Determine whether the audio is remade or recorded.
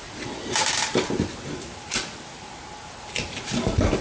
recorded